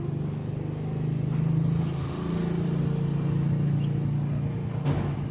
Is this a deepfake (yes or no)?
no